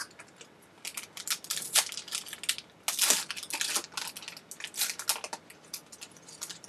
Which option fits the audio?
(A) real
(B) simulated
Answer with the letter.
A